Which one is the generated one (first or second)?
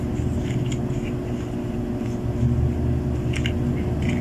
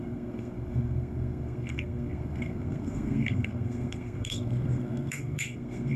second